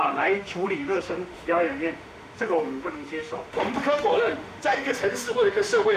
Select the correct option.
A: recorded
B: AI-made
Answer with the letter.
B